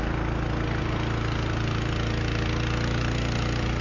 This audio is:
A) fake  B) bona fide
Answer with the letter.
B